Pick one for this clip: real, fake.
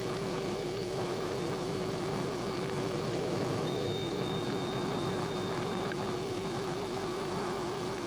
fake